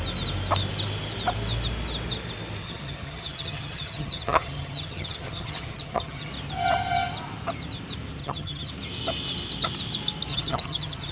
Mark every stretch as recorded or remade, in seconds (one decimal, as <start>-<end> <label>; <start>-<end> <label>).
0.0-2.6 recorded; 2.6-6.3 remade; 6.3-8.2 recorded; 8.2-8.7 remade; 8.7-10.3 recorded; 10.3-11.1 remade